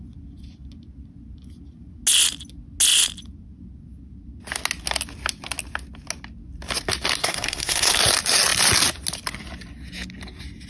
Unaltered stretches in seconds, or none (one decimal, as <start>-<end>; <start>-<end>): 0.0-7.2; 7.9-10.7